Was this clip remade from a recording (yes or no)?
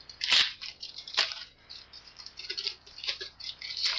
yes